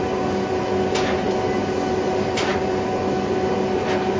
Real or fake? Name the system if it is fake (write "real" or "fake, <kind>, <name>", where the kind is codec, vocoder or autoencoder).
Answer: real